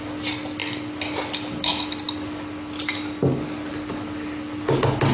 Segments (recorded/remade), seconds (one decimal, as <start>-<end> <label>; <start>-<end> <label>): 0.0-5.1 recorded